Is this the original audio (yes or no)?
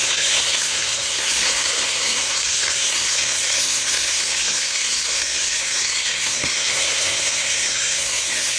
no